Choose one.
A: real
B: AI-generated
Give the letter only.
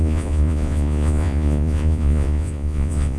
B